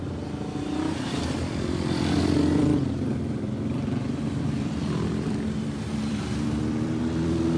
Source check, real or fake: fake